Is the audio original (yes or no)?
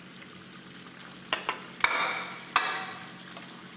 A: yes